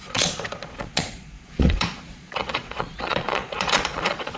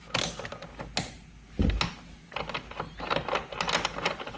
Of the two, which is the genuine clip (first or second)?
second